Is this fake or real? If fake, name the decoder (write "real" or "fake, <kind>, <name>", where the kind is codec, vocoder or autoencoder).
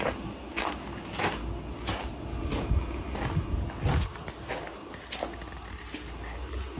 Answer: real